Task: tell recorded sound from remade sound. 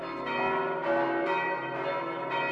recorded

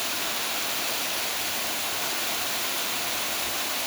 recorded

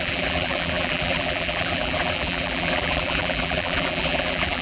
remade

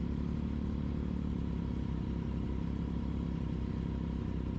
recorded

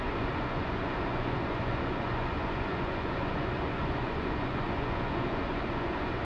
remade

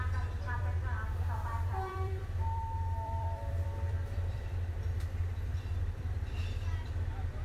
remade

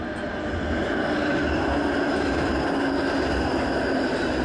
recorded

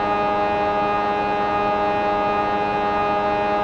recorded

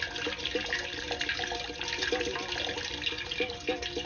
recorded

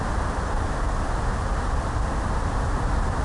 recorded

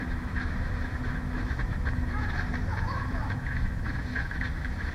remade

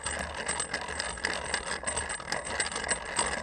recorded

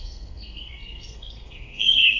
remade